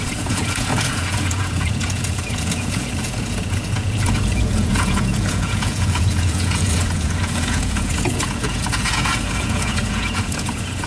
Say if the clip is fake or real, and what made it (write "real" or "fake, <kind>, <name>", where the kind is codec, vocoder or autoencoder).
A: fake, vocoder, Vocos